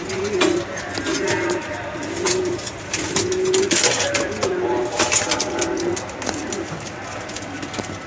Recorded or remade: recorded